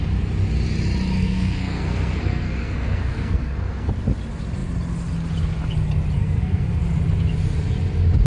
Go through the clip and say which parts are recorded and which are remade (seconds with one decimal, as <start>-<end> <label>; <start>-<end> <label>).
0.0-1.2 recorded; 1.2-3.9 remade; 3.9-6.2 recorded; 6.2-6.8 remade; 6.8-8.3 recorded